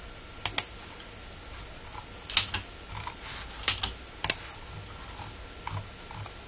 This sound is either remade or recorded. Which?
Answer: recorded